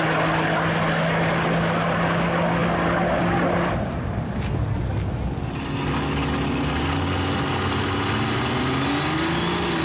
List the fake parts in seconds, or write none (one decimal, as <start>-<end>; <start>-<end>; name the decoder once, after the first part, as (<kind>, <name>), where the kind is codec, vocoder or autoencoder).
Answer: none